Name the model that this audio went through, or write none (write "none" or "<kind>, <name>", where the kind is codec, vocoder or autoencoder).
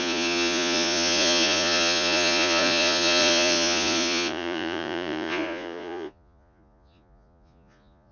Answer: vocoder, Vocos